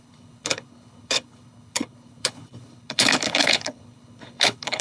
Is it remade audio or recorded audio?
remade